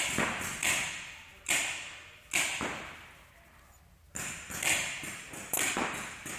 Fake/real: real